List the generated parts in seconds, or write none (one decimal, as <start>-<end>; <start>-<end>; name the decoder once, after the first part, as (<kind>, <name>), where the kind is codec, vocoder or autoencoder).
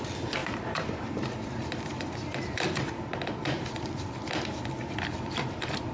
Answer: 0.0-5.9 (vocoder, BigVGAN v2)